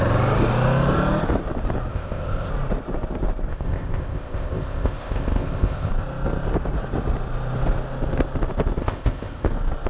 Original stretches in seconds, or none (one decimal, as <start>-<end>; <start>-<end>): 0.0-1.9; 2.5-3.5; 5.9-8.8; 9.5-9.9